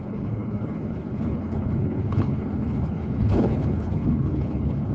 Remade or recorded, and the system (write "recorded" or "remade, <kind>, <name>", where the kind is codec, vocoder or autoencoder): remade, codec, HILCodec